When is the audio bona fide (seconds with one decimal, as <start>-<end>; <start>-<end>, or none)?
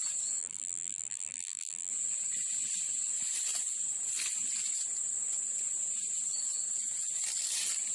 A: 0.0-0.4; 1.9-7.9